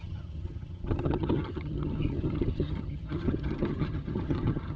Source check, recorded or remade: remade